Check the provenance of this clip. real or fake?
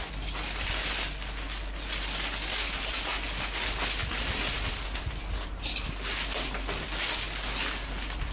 real